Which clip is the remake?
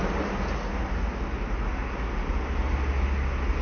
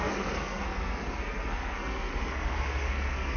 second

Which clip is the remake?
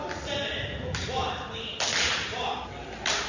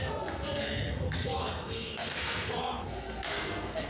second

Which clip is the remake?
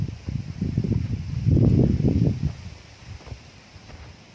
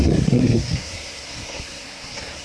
second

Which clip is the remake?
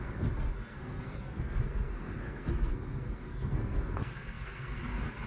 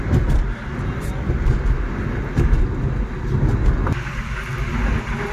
first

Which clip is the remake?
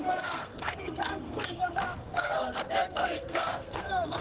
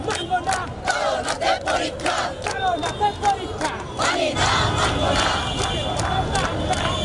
first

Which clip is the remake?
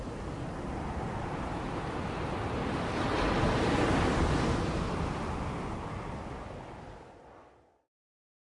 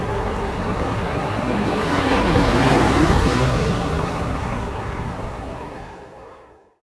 second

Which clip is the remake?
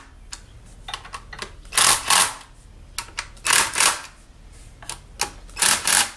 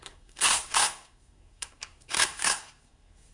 second